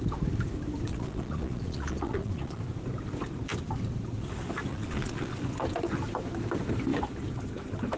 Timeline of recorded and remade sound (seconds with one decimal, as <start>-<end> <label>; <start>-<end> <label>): 0.0-0.9 recorded; 0.9-2.6 remade; 2.6-4.7 recorded; 4.7-5.4 remade; 5.4-8.0 recorded